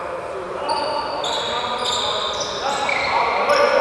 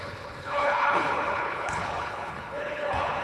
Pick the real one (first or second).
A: first